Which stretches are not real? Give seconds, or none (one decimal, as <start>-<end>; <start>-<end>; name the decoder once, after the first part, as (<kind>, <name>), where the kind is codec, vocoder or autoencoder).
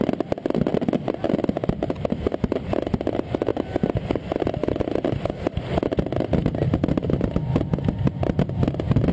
none